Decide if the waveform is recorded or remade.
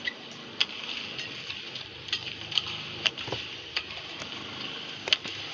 recorded